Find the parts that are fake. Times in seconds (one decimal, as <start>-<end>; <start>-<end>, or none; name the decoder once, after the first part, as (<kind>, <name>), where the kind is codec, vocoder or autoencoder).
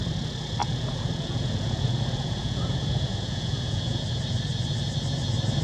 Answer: 0.6-4.0 (vocoder, Vocos)